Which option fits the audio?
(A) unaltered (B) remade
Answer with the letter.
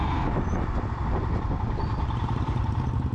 A